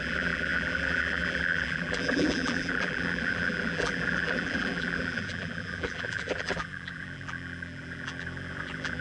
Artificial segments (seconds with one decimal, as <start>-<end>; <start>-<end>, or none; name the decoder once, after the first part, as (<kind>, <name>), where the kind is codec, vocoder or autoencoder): 0.0-9.0 (vocoder, BigVGAN v2)